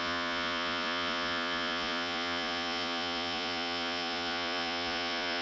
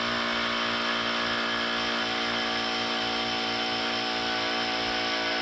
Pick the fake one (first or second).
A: first